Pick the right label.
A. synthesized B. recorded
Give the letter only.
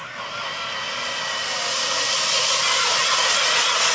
B